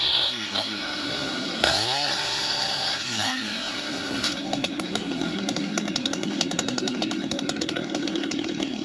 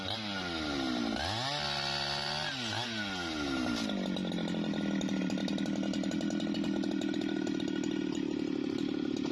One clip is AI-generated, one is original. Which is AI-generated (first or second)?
first